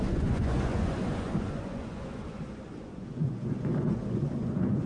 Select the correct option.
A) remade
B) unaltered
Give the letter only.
A